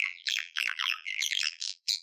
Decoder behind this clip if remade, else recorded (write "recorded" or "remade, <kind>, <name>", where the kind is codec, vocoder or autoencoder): remade, vocoder, BigVGAN v2